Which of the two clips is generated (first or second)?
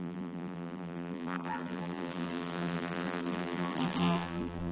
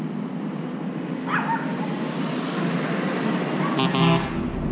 first